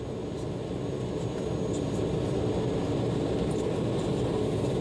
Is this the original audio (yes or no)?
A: yes